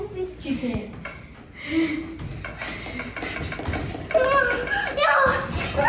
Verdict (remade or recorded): recorded